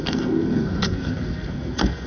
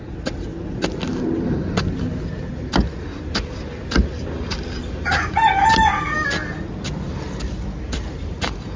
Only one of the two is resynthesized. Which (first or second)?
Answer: first